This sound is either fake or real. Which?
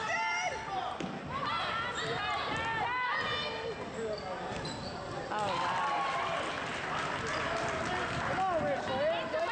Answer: real